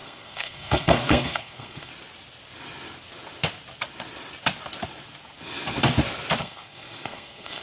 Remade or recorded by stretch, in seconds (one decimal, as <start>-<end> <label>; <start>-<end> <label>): 0.0-1.9 remade; 1.9-6.4 recorded; 6.4-7.6 remade